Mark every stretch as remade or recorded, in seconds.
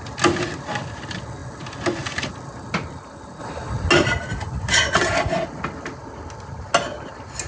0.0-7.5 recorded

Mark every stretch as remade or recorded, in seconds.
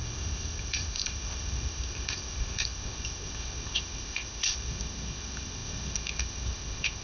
0.0-7.0 remade